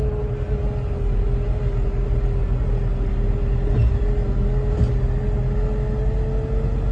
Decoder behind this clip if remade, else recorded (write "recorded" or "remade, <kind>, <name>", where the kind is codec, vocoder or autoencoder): recorded